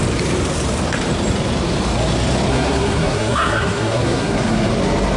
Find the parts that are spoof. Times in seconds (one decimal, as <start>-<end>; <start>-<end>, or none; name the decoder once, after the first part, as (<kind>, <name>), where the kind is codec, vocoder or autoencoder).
2.5-4.7 (codec, SNAC)